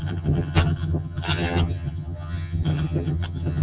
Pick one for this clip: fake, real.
fake